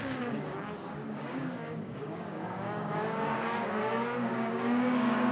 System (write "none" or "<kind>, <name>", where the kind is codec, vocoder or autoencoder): codec, DAC